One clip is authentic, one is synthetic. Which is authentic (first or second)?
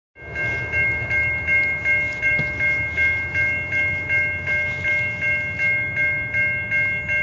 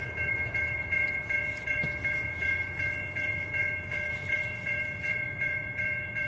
first